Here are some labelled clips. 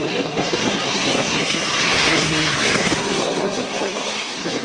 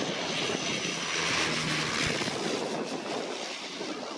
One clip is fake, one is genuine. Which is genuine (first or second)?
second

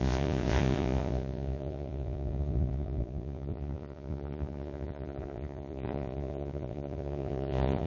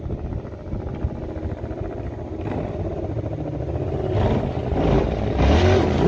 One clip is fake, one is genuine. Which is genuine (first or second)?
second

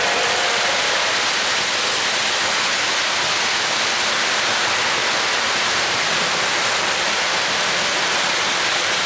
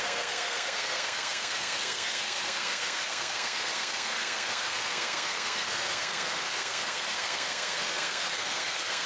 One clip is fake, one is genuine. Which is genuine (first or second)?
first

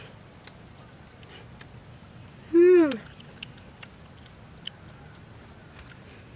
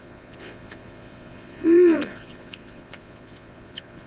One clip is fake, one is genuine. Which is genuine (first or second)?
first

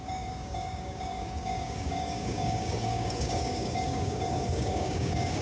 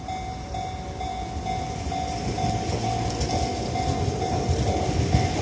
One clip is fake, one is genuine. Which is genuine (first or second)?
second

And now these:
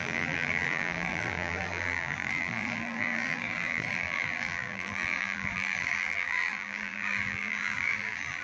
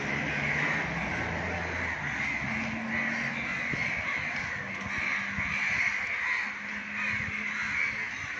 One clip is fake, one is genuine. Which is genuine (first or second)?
second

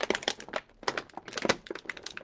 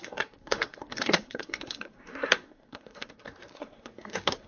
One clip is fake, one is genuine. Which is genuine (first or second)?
first